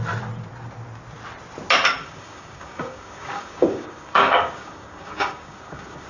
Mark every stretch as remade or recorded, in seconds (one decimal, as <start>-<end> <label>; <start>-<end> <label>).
0.0-2.0 recorded; 2.0-6.1 remade